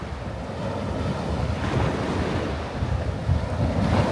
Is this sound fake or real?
real